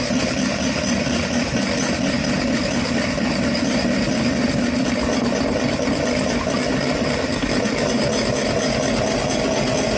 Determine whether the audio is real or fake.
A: real